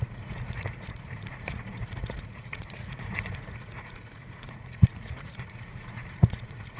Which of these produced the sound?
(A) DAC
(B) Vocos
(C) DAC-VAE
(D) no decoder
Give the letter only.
B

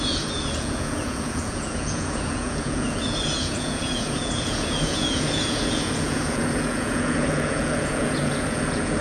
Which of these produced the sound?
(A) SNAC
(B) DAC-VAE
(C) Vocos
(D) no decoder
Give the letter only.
C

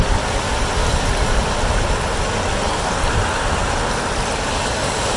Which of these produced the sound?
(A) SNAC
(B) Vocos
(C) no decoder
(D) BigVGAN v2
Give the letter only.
C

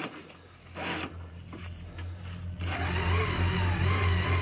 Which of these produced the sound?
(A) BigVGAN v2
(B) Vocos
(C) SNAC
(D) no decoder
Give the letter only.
D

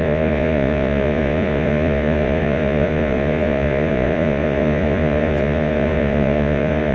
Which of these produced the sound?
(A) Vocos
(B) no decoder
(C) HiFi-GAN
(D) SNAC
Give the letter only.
A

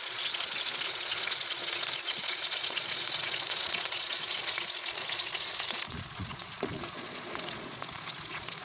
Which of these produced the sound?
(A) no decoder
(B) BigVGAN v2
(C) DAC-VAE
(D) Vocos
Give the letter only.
D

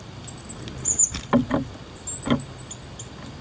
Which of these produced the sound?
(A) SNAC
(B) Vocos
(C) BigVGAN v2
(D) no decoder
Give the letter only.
D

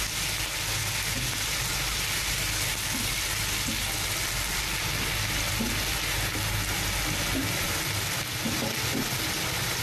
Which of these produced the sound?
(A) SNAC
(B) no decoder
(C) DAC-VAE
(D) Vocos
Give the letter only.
B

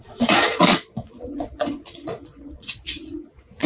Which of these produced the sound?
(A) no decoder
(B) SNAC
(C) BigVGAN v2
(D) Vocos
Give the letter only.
D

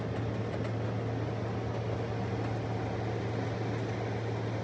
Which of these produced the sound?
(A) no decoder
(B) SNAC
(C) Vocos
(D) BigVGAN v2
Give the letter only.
A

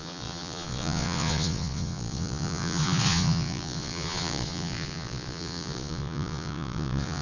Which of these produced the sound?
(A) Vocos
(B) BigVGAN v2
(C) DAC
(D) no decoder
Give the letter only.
A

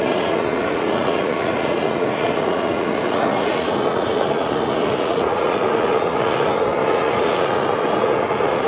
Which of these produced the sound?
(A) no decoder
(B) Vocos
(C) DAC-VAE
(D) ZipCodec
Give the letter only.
B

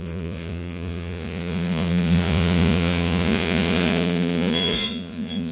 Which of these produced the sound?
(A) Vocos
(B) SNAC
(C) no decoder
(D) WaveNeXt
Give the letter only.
A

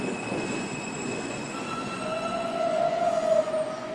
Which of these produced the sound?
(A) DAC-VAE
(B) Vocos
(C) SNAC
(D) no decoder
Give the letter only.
B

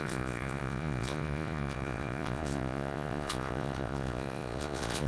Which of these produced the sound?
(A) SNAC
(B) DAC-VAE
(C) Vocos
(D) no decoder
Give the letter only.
C